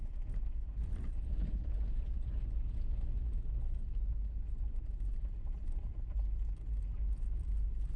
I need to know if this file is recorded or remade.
recorded